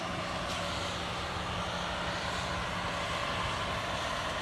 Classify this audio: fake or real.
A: real